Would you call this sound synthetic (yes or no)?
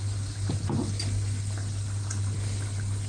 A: no